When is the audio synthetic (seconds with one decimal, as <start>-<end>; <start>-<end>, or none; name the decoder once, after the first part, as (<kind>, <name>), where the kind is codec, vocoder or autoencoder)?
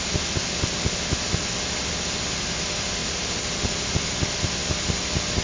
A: none